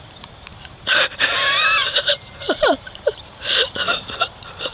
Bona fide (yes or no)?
no